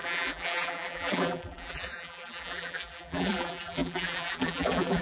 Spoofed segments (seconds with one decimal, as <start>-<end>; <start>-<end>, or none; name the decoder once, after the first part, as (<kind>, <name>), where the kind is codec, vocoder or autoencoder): 0.0-5.0 (vocoder, BigVGAN v2)